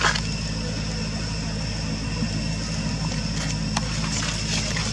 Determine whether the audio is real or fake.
real